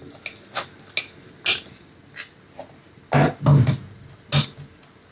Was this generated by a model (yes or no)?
no